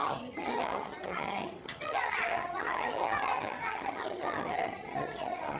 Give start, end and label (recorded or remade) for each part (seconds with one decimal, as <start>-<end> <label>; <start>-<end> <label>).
0.0-5.6 remade